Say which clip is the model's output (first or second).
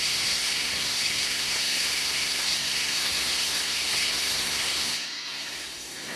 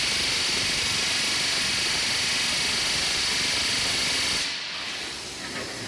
first